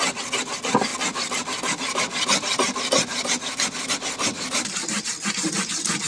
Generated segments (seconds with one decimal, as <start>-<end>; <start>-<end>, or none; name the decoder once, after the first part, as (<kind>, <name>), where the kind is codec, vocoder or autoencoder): none